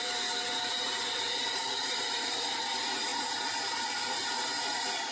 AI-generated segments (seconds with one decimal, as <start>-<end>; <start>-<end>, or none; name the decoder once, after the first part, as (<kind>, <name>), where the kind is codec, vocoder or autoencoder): 0.7-3.1 (vocoder, BigVGAN v2); 3.7-5.1